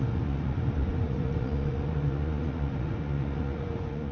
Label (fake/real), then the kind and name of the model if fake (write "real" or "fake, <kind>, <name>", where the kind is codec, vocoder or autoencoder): fake, vocoder, Vocos